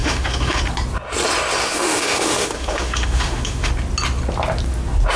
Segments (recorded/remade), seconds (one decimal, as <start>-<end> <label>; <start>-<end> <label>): 0.0-0.6 remade; 0.6-1.6 recorded; 1.6-3.7 remade; 3.7-5.2 recorded

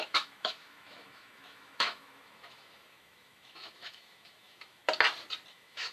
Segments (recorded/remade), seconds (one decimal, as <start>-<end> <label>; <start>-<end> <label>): 0.0-4.8 remade; 4.8-5.5 recorded; 5.5-5.9 remade